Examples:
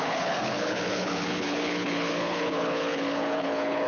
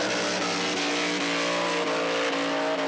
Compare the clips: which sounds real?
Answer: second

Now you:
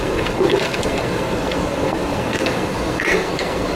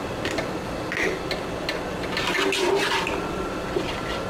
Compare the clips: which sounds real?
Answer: second